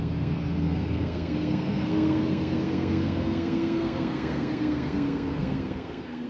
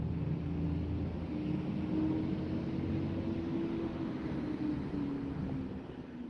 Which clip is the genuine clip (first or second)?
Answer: second